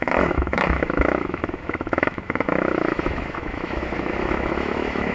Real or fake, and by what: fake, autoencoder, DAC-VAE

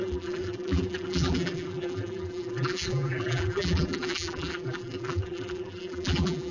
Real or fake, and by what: fake, vocoder, BigVGAN v2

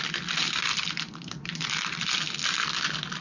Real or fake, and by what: real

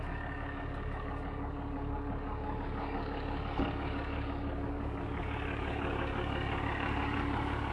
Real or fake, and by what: fake, codec, DAC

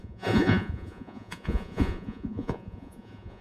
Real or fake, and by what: fake, vocoder, Vocos